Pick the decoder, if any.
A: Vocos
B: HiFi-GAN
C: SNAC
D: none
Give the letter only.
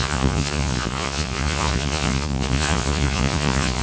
A